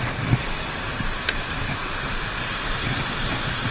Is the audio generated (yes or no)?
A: yes